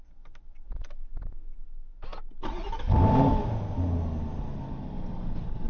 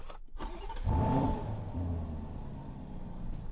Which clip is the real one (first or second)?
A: first